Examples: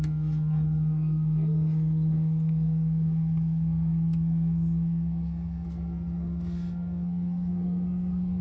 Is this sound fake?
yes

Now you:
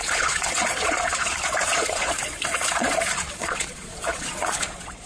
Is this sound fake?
yes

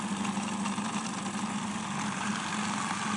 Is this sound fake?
no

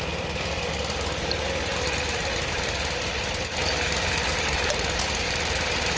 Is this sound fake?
no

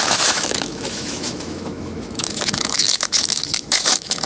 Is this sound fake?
yes